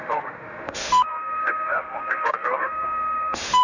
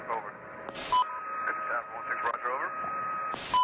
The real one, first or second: second